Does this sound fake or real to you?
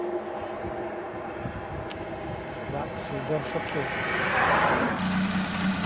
real